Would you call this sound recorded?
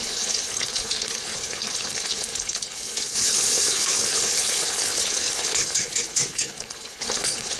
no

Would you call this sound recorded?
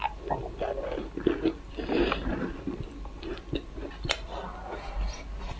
yes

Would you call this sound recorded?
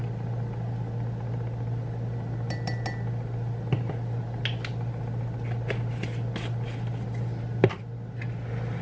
yes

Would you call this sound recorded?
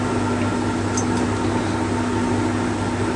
yes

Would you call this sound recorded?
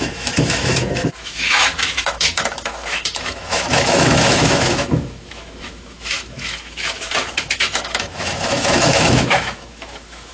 no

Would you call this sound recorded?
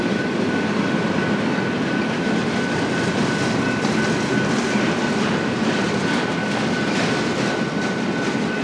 no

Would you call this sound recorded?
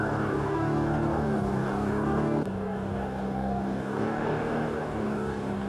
no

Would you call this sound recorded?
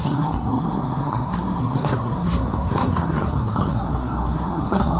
no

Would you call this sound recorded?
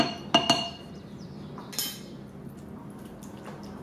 yes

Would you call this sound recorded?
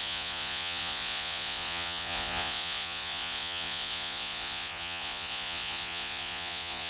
no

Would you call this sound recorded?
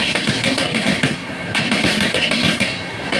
no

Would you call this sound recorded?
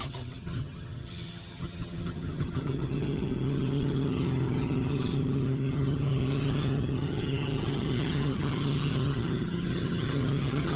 no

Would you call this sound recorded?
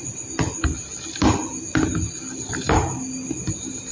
yes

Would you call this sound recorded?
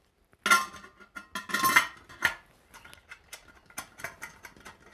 yes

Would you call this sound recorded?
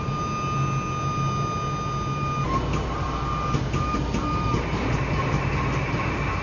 yes